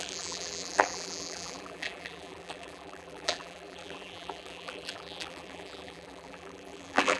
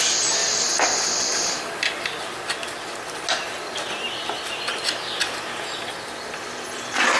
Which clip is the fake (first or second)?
first